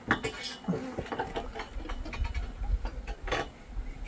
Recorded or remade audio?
recorded